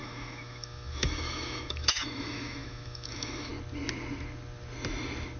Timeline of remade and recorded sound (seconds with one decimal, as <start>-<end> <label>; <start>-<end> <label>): 0.0-3.5 remade; 3.5-5.4 recorded